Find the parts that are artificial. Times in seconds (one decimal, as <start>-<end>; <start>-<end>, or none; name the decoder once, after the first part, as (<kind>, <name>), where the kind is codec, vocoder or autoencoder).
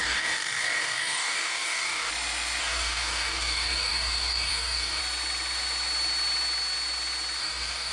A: 0.0-2.1 (codec, DAC); 2.6-5.0; 7.4-7.9